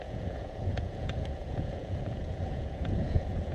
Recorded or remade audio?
remade